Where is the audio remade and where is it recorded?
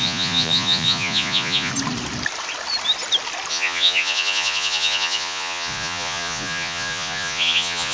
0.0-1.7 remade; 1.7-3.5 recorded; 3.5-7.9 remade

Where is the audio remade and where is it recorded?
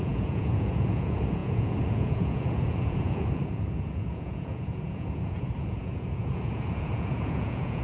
0.0-7.8 remade